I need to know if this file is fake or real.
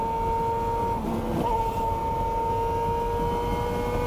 real